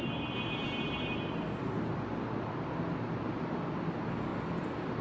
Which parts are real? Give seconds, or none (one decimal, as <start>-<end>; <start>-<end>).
0.0-5.0